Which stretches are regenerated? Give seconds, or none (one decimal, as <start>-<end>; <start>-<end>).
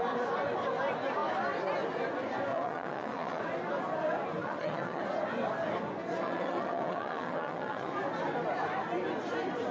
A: 2.5-3.4; 4.4-5.0; 6.1-7.9